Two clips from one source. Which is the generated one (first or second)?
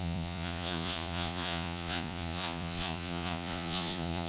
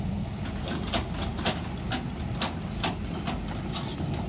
first